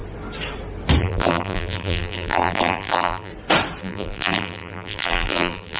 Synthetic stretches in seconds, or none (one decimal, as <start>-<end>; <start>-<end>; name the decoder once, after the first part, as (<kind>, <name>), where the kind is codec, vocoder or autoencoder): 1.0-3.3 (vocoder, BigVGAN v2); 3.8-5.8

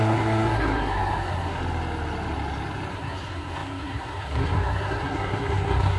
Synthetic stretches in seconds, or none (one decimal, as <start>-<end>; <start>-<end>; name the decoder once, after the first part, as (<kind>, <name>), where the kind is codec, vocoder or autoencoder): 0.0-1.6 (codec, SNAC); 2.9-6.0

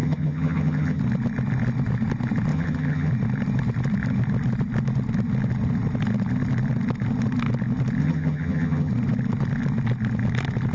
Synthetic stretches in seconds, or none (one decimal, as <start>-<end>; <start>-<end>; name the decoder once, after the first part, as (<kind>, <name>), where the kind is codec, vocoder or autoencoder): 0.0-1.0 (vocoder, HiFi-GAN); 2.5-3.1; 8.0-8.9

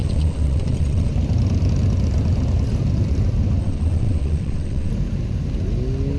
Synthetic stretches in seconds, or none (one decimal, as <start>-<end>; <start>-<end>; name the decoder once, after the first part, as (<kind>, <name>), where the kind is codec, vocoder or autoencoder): 0.0-1.1 (vocoder, WaveNeXt); 3.6-4.9

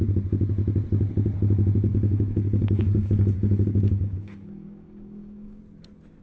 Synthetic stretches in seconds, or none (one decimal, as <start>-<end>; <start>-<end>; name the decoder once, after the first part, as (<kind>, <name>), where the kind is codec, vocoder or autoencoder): 1.9-5.6 (codec, DAC)